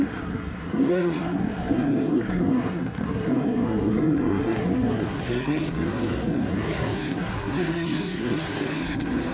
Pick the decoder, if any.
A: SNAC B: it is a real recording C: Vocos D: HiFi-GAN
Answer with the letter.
A